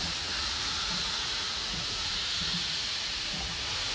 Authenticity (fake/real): fake